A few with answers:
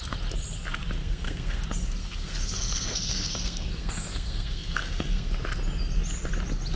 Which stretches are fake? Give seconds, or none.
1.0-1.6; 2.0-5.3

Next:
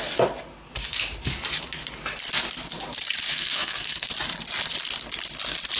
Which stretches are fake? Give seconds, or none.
3.3-4.1

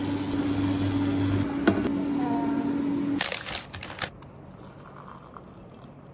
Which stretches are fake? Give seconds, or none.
none

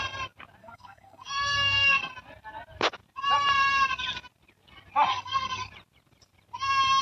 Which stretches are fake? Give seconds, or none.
0.6-2.1; 5.1-5.7

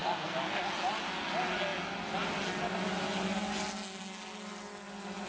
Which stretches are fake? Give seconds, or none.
0.0-0.6

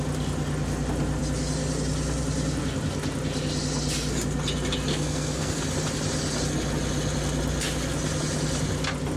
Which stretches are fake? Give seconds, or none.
4.9-5.6

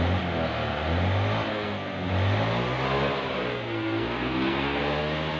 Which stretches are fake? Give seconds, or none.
1.5-2.1; 3.5-5.0